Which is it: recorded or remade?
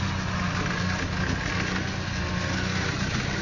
recorded